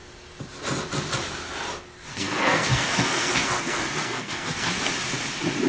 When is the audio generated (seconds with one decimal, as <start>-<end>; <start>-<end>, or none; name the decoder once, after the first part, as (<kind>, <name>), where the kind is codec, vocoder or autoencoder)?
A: 2.1-4.7 (codec, SNAC)